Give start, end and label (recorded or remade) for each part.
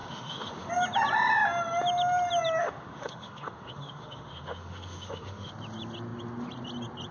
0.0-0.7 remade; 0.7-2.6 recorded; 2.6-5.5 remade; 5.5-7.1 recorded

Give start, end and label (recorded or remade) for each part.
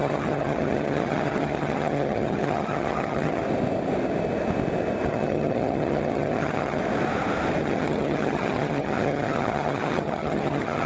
0.0-3.4 remade; 3.4-5.1 recorded; 5.1-6.8 remade; 6.8-7.6 recorded; 7.6-10.9 remade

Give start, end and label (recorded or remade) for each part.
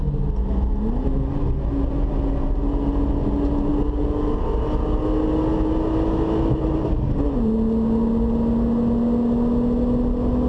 0.0-10.5 recorded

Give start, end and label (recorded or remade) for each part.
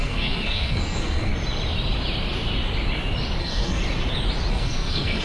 0.0-1.3 remade; 1.3-3.4 recorded; 3.4-3.8 remade; 3.8-4.5 recorded; 4.5-5.2 remade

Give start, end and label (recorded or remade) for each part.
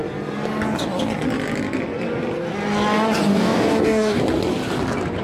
0.0-3.3 recorded; 3.3-4.2 remade; 4.2-5.2 recorded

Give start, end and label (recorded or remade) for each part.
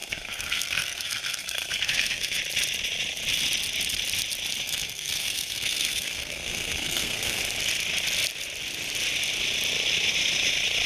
0.0-2.4 remade; 2.4-4.6 recorded; 4.6-7.4 remade; 7.4-10.9 recorded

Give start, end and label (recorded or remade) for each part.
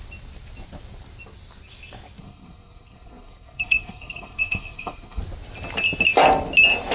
0.0-2.2 recorded; 2.2-5.2 remade; 5.2-6.9 recorded